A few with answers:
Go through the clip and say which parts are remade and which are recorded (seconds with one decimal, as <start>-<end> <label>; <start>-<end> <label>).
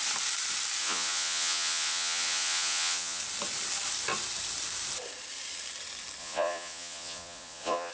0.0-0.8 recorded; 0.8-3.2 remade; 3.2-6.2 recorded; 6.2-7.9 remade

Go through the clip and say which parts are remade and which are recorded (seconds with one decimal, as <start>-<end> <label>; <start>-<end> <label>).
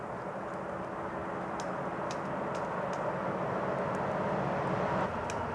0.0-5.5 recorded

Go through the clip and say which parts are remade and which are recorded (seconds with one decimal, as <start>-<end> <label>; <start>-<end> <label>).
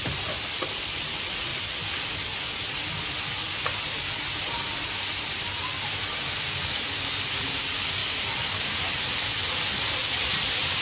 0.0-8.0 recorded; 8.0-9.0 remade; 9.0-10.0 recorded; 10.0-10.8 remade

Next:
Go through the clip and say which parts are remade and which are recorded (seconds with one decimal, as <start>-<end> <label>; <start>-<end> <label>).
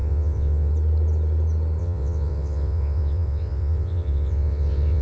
0.0-0.7 remade; 0.7-1.8 recorded; 1.8-5.0 remade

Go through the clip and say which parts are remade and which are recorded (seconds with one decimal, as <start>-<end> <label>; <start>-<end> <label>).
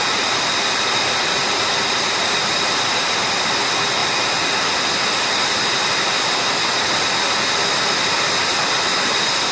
0.0-9.5 recorded